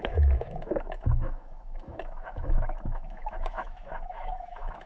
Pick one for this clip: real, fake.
fake